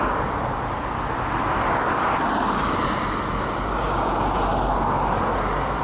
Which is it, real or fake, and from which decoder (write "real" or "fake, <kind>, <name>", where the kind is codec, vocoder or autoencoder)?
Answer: real